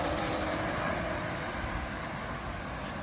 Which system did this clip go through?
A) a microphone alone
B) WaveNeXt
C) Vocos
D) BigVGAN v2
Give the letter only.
D